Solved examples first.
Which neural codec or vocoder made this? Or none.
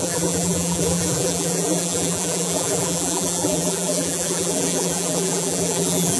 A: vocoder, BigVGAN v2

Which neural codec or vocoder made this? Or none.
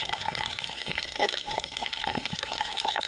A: codec, SNAC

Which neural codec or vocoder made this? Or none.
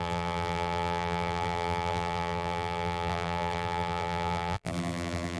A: vocoder, BigVGAN v2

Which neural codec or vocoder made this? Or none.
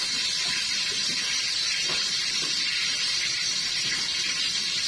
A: vocoder, BigVGAN v2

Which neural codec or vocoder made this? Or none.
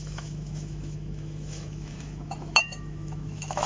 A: autoencoder, DAC-VAE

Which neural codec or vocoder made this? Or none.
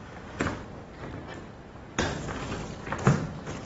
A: none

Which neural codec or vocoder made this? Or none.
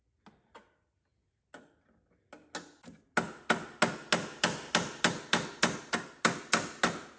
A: none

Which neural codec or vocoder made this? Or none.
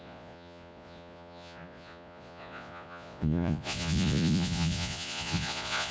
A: vocoder, Vocos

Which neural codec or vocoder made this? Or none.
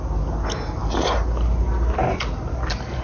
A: none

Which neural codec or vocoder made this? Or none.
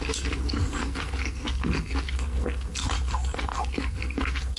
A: codec, SNAC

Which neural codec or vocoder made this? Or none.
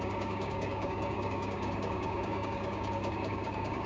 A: codec, DAC